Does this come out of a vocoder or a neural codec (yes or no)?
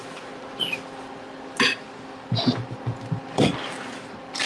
no